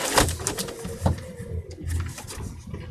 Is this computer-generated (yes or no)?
no